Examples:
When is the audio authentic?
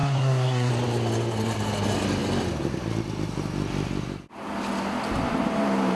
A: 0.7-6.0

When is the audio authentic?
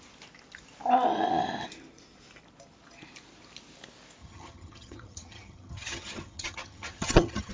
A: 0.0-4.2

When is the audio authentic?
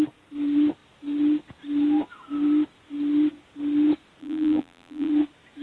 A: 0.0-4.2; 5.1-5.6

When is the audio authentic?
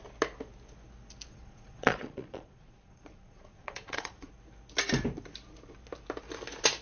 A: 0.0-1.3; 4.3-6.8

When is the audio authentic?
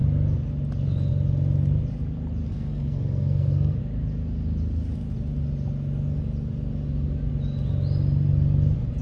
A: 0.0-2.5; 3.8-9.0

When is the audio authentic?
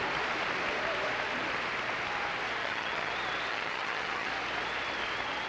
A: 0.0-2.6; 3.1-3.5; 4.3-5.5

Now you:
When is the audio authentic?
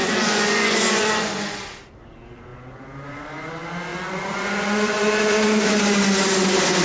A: 1.6-3.9; 5.8-6.8